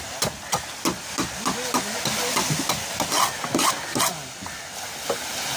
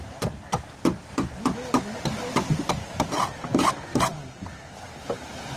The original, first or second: first